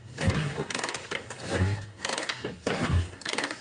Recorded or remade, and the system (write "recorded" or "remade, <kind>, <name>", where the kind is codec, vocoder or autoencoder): remade, codec, SNAC